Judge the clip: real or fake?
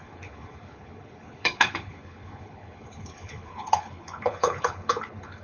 fake